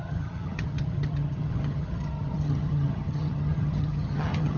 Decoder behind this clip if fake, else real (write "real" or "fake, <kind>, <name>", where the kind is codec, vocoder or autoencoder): fake, vocoder, HiFi-GAN